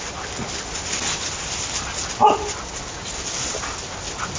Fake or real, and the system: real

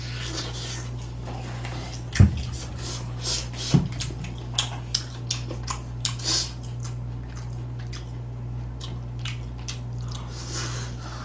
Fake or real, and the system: real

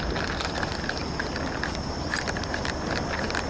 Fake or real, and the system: real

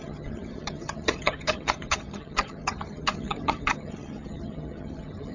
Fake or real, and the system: fake, vocoder, HiFi-GAN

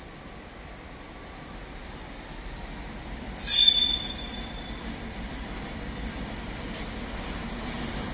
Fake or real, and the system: real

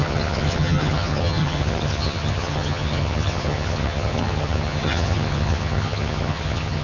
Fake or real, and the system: fake, vocoder, HiFi-GAN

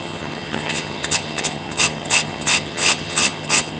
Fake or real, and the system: fake, vocoder, HiFi-GAN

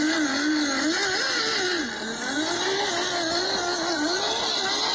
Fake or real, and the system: real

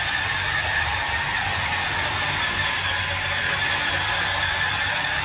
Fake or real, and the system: real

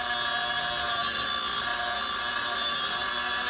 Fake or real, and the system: real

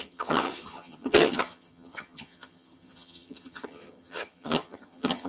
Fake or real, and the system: fake, vocoder, HiFi-GAN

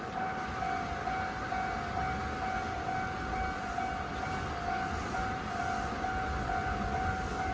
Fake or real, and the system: real